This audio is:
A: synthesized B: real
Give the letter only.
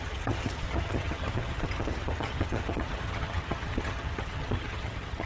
A